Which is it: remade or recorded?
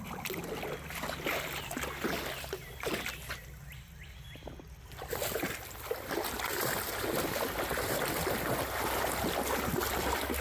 recorded